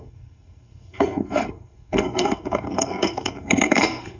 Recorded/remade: remade